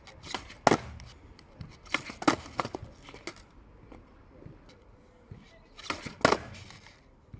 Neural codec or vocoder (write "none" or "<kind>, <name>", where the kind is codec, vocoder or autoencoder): none